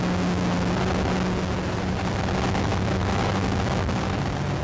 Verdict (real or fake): real